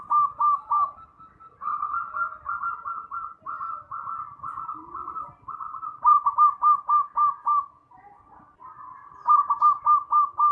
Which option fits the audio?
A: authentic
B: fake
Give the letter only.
A